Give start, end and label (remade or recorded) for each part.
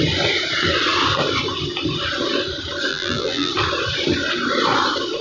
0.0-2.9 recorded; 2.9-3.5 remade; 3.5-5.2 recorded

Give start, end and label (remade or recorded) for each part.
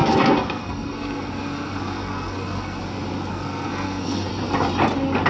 0.0-2.8 remade; 2.8-3.3 recorded; 3.3-4.3 remade; 4.3-5.3 recorded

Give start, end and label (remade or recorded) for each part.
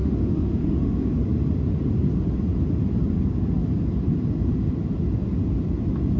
0.0-1.1 remade; 1.1-6.2 recorded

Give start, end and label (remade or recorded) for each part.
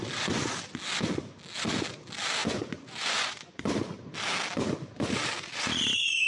0.0-2.4 recorded; 2.4-3.6 remade; 3.6-6.3 recorded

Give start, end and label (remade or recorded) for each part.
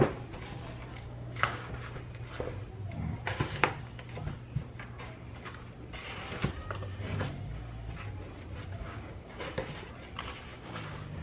0.0-0.9 recorded; 0.9-1.7 remade; 1.7-8.7 recorded; 8.7-9.4 remade; 9.4-10.5 recorded; 10.5-11.2 remade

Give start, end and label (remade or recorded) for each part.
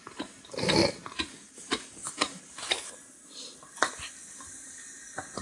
0.0-1.3 recorded; 1.3-2.4 remade; 2.4-5.4 recorded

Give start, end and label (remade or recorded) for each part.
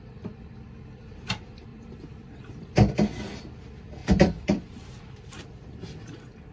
0.0-1.7 recorded; 1.7-2.6 remade; 2.6-4.0 recorded; 4.0-5.4 remade; 5.4-6.5 recorded